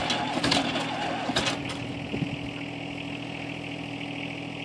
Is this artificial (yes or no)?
no